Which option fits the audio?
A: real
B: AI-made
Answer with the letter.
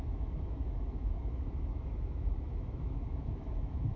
B